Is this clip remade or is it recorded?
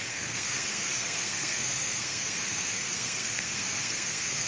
remade